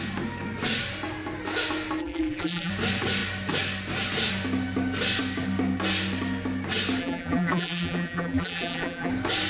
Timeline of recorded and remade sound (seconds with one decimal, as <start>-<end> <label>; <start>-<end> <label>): 0.0-2.0 recorded; 2.0-2.7 remade; 2.7-7.0 recorded; 7.0-9.1 remade; 9.1-9.5 recorded